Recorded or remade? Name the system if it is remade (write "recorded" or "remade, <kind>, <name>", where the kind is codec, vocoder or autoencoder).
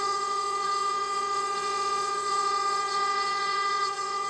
remade, vocoder, Vocos